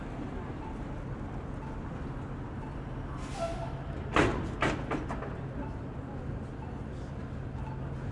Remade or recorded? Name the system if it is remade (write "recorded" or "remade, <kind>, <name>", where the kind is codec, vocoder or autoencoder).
recorded